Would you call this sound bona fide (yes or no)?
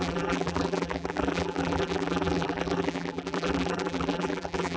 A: no